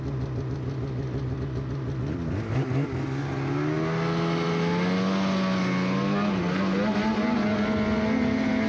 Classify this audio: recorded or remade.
recorded